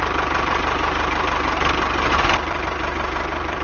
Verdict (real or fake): fake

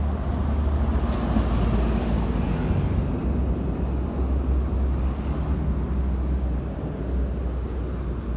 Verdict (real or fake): real